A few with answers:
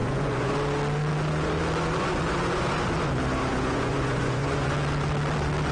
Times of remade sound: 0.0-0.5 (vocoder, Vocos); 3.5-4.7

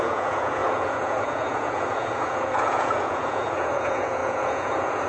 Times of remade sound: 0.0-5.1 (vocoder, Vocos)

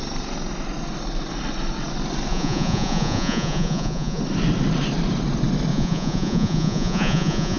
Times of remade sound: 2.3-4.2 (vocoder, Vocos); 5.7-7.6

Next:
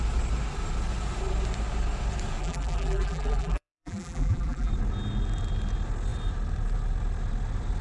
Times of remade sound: 2.4-4.7 (vocoder, BigVGAN v2)

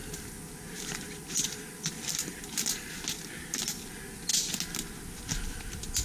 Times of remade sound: none

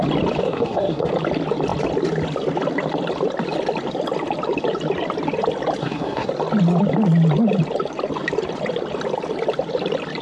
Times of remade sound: 0.4-1.1 (codec, SNAC); 5.8-6.3

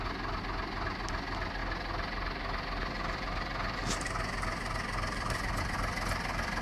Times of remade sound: none

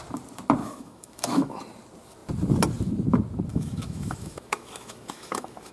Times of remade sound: 0.6-1.6 (autoencoder, DAC-VAE); 3.5-5.7